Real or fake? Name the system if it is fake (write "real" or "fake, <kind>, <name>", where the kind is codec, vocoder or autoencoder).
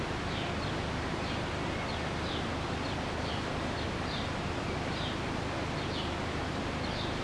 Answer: real